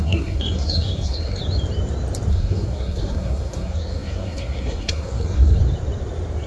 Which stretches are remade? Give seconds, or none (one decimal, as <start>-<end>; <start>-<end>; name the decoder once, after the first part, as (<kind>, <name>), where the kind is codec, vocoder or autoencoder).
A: 0.0-1.4 (codec, SNAC); 2.3-5.6